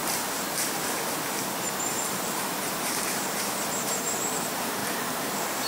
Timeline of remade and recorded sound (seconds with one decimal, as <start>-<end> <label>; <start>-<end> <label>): 0.0-1.9 recorded; 1.9-5.7 remade